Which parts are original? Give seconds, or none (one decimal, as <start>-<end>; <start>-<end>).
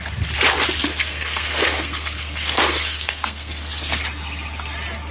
0.0-0.9; 4.0-5.1